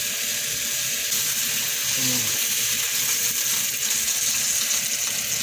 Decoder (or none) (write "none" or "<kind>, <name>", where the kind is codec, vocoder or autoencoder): none